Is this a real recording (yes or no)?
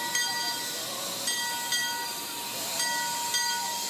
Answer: yes